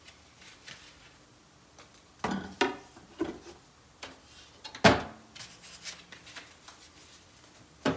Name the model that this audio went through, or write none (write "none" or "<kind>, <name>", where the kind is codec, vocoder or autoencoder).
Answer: none